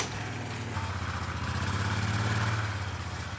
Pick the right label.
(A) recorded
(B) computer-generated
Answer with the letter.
A